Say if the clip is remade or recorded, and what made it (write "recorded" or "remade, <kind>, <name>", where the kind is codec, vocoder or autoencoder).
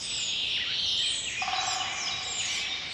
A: recorded